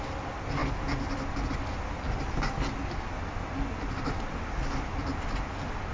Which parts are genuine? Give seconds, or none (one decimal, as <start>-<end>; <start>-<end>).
0.0-5.9